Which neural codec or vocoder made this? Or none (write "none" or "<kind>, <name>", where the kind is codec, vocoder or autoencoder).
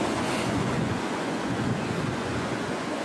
vocoder, Vocos